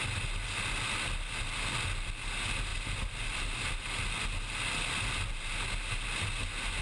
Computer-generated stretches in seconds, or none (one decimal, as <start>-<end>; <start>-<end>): none